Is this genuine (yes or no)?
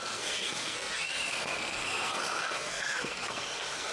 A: no